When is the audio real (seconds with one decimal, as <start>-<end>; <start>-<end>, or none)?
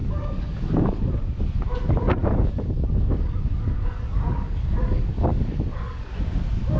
1.1-2.2; 6.1-6.8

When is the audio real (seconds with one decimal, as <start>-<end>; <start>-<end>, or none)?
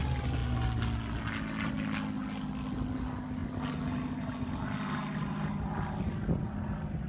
0.0-7.1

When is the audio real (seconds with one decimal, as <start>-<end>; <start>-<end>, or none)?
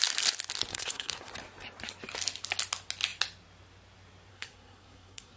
0.0-0.7; 1.3-4.3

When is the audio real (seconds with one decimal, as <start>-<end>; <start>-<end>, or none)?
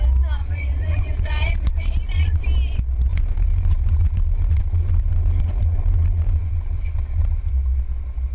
0.0-0.4; 2.4-3.1; 7.5-8.3